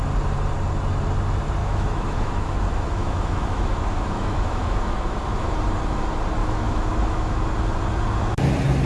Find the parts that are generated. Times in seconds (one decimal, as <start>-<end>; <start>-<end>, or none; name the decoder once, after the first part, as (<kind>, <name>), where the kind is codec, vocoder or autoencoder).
1.6-5.5 (autoencoder, DAC-VAE); 6.4-7.4